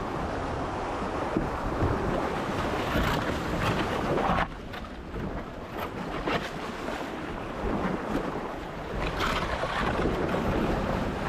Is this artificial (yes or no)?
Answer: no